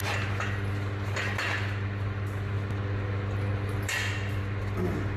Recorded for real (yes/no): yes